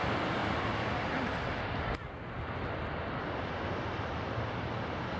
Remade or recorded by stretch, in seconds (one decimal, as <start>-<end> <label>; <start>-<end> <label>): 0.0-5.2 remade